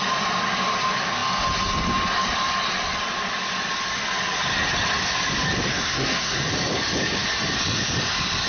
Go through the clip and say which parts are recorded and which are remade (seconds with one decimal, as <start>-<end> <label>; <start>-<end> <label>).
0.0-5.7 recorded; 5.7-6.4 remade; 6.4-8.5 recorded